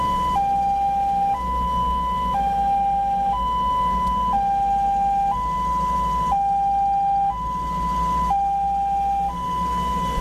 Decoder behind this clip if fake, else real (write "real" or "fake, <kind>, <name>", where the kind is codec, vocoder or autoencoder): real